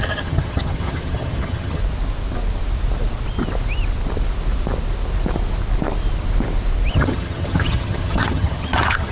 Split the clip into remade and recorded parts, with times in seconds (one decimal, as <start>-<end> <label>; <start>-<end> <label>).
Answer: 0.0-1.8 remade; 1.8-6.9 recorded; 6.9-9.1 remade